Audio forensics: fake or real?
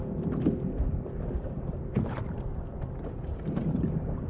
real